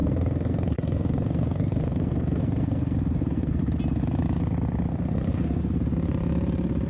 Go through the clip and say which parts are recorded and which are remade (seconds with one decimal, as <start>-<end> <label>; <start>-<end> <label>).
0.0-3.6 remade; 3.6-4.9 recorded; 4.9-5.6 remade; 5.6-6.9 recorded